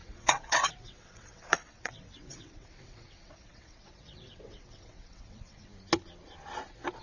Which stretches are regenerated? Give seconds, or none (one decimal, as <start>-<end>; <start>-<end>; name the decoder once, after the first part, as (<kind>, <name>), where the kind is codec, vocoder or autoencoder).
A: 0.0-5.7 (vocoder, WaveNeXt)

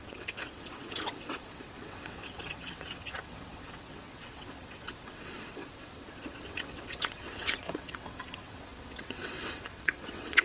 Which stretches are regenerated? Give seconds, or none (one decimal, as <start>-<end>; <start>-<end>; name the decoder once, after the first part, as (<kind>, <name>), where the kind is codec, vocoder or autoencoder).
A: 0.0-10.4 (vocoder, WaveNeXt)

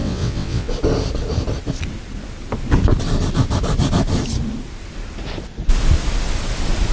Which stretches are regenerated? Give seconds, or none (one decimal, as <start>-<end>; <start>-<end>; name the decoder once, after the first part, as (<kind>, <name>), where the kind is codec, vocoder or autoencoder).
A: 0.0-0.7 (vocoder, WaveNeXt)

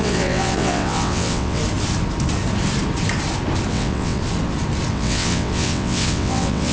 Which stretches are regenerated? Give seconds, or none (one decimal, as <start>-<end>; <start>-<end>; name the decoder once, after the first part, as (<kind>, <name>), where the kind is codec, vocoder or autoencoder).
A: 0.0-1.6 (vocoder, WaveNeXt); 3.7-4.2; 4.9-6.7

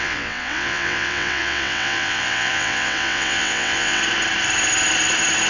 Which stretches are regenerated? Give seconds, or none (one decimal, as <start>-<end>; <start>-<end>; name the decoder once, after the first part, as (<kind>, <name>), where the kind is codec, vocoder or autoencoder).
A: 0.0-4.0 (vocoder, WaveNeXt)

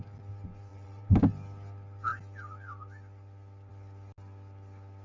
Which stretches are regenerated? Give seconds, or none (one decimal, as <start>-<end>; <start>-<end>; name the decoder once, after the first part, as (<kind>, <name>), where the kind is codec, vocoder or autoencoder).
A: 0.7-1.2 (vocoder, WaveNeXt)

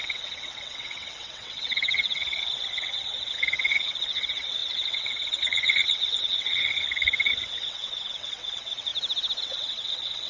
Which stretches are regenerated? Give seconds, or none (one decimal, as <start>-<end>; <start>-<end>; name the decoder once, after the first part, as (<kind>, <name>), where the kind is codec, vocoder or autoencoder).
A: 0.0-8.9 (vocoder, WaveNeXt); 9.4-10.3